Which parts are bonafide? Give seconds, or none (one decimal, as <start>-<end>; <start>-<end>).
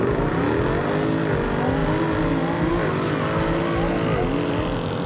0.0-5.1